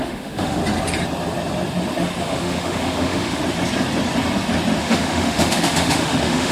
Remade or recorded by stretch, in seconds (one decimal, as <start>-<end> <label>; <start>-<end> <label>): 0.0-0.6 remade; 0.6-2.2 recorded; 2.2-3.4 remade; 3.4-4.8 recorded; 4.8-6.5 remade